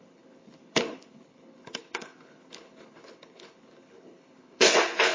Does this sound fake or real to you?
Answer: fake